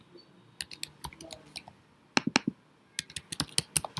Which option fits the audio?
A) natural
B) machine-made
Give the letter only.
A